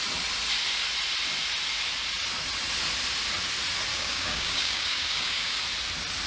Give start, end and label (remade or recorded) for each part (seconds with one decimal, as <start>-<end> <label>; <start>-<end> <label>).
0.0-3.9 recorded; 3.9-5.6 remade; 5.6-6.3 recorded